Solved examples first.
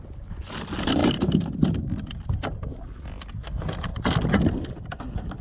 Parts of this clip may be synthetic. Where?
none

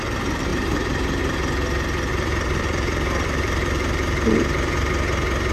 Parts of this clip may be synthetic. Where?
0.5-1.2 (vocoder, BigVGAN v2); 2.1-4.9

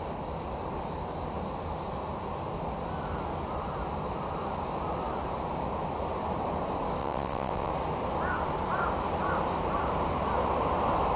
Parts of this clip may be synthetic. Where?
7.0-7.7 (vocoder, WaveNeXt)

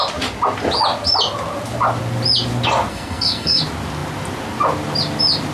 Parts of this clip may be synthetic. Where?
2.9-3.6 (codec, SNAC)

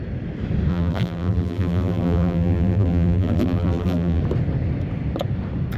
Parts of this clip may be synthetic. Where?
0.7-4.2 (vocoder, BigVGAN v2)

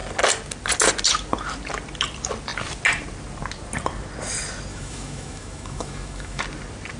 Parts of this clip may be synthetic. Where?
4.7-6.4 (autoencoder, DAC-VAE)

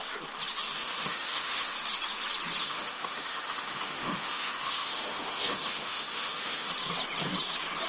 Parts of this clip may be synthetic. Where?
0.8-1.7 (autoencoder, DAC-VAE); 2.6-6.7

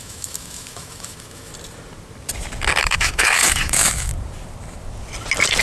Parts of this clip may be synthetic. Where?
0.0-1.5 (autoencoder, DAC-VAE); 2.8-4.1